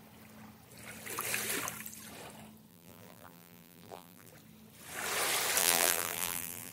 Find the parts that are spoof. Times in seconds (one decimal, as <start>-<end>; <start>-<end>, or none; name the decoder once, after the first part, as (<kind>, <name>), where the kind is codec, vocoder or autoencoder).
2.7-4.3 (vocoder, BigVGAN v2); 5.6-6.7